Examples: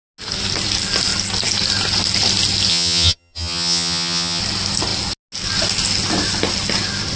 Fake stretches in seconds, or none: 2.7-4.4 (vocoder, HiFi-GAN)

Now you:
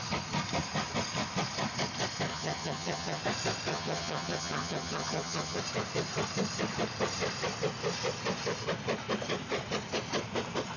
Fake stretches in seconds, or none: 2.3-3.2 (vocoder, HiFi-GAN); 3.7-5.6

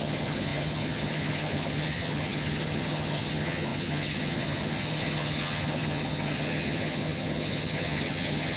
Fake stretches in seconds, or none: 0.0-8.6 (vocoder, HiFi-GAN)